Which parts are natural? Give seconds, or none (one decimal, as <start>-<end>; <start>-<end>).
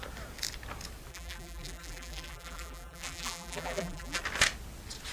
0.0-1.1; 4.2-5.1